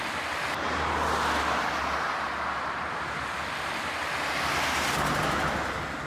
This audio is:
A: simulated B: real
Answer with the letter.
B